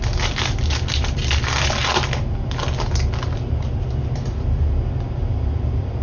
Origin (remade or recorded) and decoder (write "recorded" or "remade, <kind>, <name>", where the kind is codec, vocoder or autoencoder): recorded